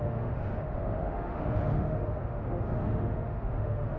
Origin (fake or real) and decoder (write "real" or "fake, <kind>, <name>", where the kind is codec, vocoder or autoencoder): fake, autoencoder, DAC-VAE